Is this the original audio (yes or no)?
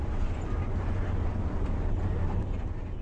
yes